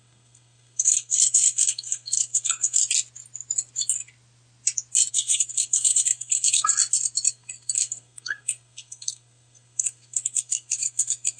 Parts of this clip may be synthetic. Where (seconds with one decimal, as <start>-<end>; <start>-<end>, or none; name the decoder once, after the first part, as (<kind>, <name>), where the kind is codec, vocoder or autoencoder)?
0.0-2.8 (codec, SNAC); 5.1-6.7; 7.3-11.4